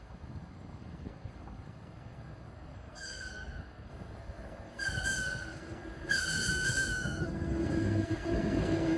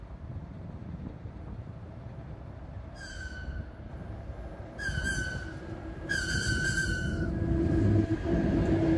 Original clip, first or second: second